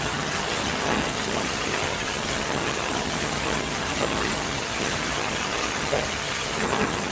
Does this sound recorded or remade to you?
remade